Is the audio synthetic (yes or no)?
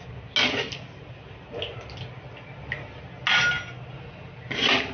no